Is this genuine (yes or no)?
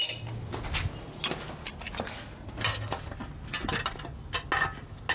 yes